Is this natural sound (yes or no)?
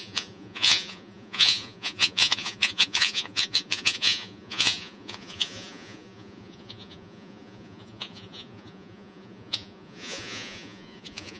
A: no